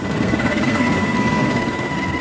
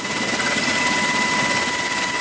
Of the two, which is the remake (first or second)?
first